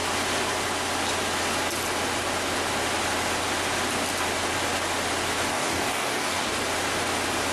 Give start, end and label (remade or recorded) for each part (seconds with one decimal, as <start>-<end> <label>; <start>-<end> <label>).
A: 0.0-5.5 recorded; 5.5-6.6 remade; 6.6-7.5 recorded